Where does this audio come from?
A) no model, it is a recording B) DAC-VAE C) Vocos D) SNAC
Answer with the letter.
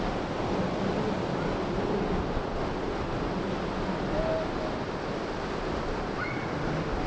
A